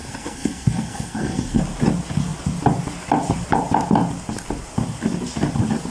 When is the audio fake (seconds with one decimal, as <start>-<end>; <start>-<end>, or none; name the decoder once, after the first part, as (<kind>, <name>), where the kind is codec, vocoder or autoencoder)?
0.0-1.6 (codec, SNAC)